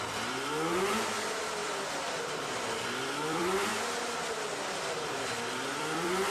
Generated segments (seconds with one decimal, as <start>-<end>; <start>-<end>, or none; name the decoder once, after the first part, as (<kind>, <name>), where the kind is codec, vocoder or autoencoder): 0.0-1.6 (vocoder, BigVGAN v2); 2.2-3.7; 4.8-6.3